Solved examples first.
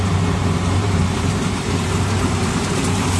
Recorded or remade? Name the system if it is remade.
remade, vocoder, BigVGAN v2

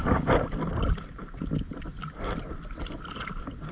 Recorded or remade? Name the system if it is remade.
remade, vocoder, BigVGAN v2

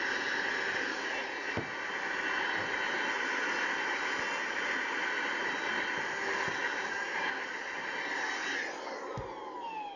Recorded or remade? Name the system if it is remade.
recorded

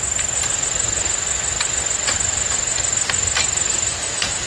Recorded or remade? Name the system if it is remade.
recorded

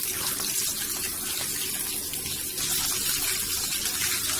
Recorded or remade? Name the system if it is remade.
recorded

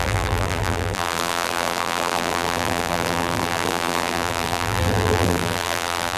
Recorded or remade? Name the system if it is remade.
remade, vocoder, BigVGAN v2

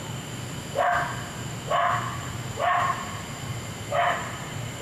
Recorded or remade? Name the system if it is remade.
remade, vocoder, BigVGAN v2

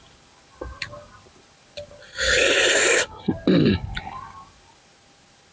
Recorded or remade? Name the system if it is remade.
recorded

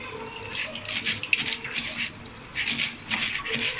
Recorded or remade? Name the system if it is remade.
recorded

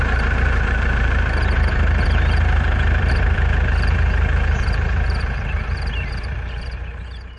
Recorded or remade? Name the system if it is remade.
remade, vocoder, BigVGAN v2